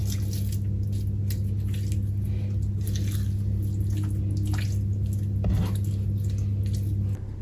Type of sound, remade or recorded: recorded